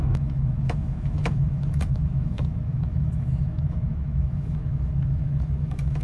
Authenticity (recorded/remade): remade